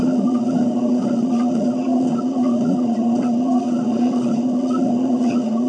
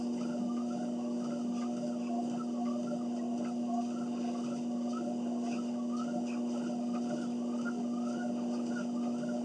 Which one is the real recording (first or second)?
second